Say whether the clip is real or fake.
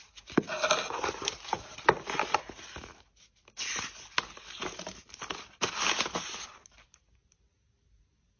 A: real